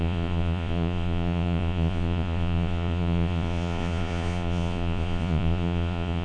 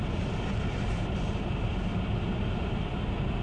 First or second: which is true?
second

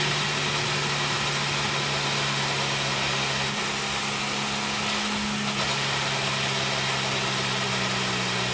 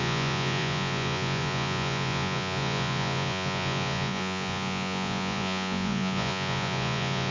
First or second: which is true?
first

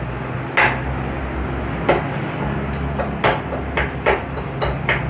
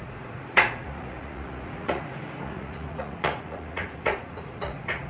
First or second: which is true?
first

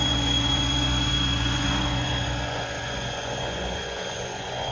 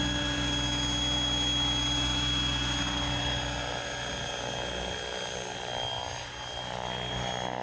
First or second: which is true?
second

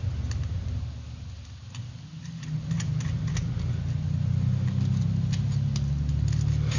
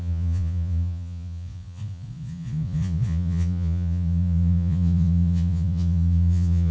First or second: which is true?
first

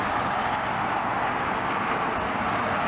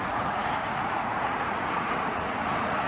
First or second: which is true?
first